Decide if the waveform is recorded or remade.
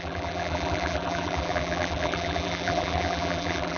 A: remade